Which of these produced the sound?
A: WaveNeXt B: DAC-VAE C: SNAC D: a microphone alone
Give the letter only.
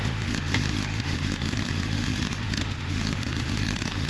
B